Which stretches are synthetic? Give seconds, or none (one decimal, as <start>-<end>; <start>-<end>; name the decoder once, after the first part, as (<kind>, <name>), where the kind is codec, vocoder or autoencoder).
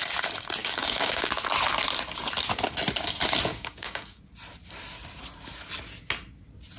0.6-1.3 (codec, DAC); 3.5-4.2